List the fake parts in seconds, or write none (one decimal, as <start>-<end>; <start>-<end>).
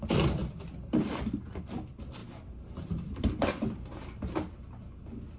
2.2-4.2